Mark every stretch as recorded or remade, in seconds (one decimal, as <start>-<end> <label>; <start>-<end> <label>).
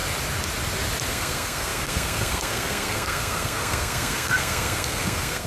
0.0-1.1 recorded; 1.1-5.5 remade